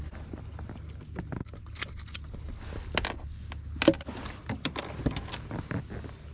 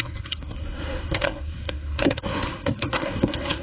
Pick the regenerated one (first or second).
second